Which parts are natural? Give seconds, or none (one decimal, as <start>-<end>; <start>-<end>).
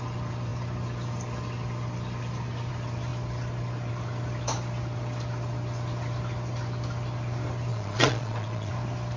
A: 0.0-7.7; 8.7-9.2